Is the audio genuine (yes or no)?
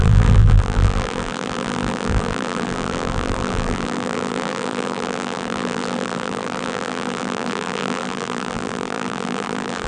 no